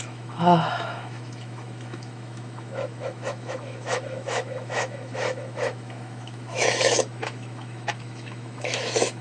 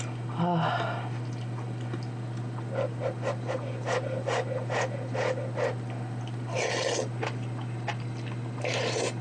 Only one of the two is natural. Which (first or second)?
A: second